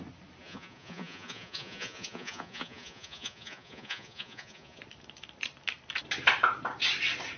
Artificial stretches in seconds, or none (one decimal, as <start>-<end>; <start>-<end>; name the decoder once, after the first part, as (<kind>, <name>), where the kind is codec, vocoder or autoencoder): 0.4-4.8 (vocoder, Vocos)